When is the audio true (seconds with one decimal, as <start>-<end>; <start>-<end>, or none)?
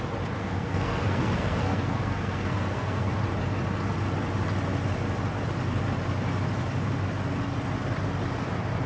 0.0-0.4; 3.1-8.9